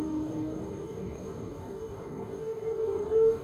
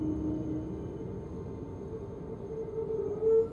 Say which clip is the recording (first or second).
second